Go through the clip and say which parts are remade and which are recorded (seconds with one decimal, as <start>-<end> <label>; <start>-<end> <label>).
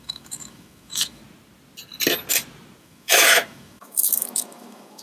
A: 0.0-1.2 remade; 1.2-2.8 recorded; 2.8-5.0 remade